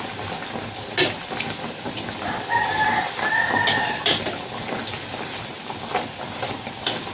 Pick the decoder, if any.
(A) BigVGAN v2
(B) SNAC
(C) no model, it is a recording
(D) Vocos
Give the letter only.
C